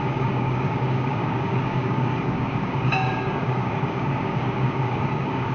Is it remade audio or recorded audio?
remade